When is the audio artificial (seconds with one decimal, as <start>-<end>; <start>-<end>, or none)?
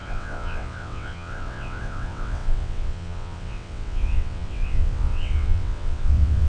0.0-6.5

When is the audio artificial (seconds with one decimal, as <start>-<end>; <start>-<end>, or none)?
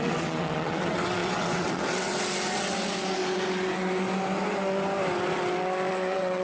0.0-2.1; 5.9-6.4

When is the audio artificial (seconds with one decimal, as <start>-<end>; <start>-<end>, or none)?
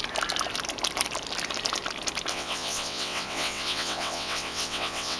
2.3-5.2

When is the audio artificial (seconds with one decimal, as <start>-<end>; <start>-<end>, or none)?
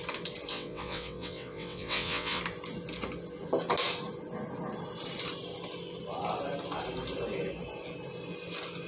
0.5-2.4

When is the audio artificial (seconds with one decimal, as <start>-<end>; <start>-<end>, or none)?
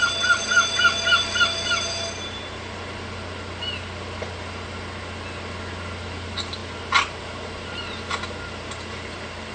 none